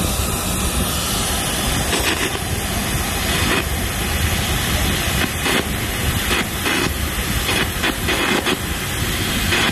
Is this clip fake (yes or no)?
no